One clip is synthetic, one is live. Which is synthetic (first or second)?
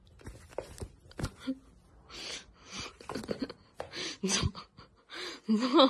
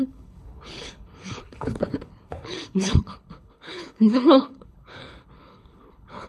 second